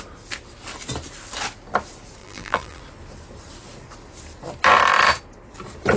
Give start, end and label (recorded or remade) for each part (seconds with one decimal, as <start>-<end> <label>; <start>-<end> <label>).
0.0-2.2 recorded; 2.2-2.8 remade; 2.8-6.0 recorded